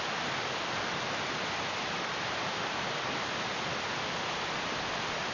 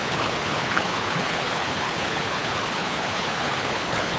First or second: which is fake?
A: second